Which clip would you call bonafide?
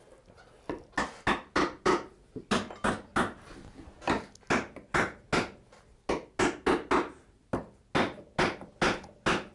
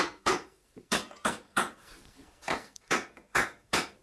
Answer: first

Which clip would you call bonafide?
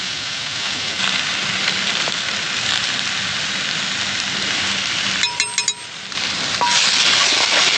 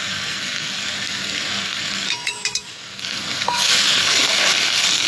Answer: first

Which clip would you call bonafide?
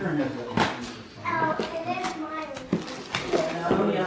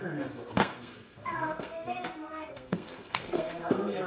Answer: first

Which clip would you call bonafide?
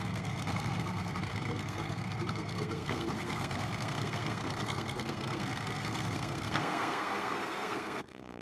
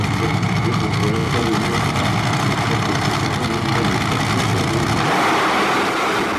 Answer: second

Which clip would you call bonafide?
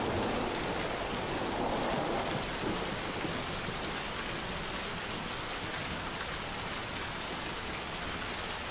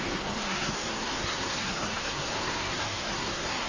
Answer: first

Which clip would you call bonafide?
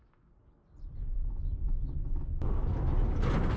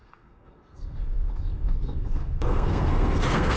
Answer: first